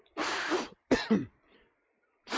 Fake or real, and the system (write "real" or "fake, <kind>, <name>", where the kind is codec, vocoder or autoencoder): fake, vocoder, BigVGAN v2